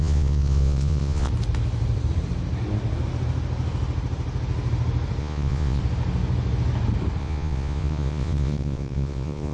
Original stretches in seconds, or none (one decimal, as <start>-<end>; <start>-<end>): 1.3-5.2; 5.8-7.2